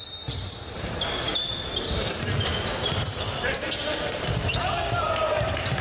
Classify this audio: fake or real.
fake